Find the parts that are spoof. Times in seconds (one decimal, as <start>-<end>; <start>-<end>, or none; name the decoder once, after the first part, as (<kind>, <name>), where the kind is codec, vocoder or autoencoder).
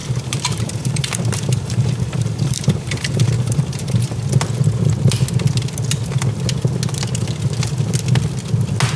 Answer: 0.0-4.3 (vocoder, BigVGAN v2)